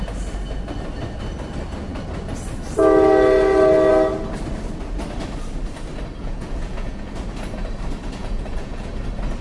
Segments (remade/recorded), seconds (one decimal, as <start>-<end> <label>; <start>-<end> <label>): 0.0-6.2 recorded; 6.2-7.1 remade; 7.1-8.2 recorded; 8.2-8.9 remade; 8.9-9.4 recorded